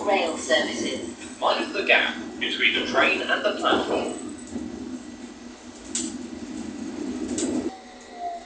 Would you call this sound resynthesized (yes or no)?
no